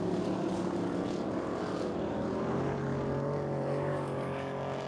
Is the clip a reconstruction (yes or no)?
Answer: yes